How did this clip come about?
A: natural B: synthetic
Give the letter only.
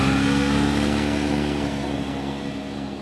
B